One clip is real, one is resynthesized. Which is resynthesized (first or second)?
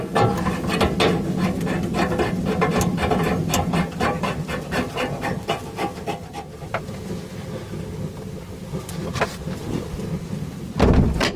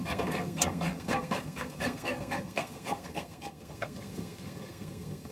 second